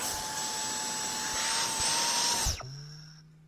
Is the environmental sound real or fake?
real